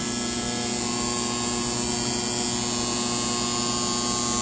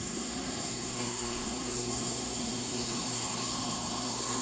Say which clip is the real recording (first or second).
first